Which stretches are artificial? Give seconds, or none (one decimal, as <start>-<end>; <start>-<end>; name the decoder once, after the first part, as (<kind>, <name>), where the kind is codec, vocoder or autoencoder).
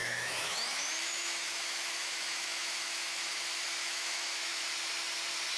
0.0-3.4 (autoencoder, DAC-VAE); 3.8-4.6